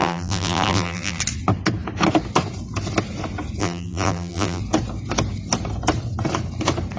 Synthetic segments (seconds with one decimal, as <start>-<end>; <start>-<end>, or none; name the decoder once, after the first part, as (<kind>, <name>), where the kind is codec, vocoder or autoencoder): 0.0-1.2 (vocoder, BigVGAN v2); 3.6-4.6